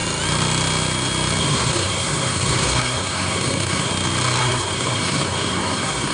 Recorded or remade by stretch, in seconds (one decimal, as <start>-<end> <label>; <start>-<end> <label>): 0.0-1.4 recorded; 1.4-3.9 remade; 3.9-4.4 recorded; 4.4-6.1 remade